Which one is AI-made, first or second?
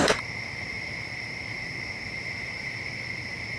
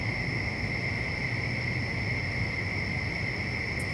first